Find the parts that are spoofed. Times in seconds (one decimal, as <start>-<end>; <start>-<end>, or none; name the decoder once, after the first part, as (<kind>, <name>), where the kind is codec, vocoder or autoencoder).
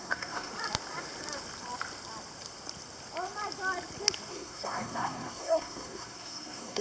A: 0.0-0.5 (codec, SNAC); 4.3-6.8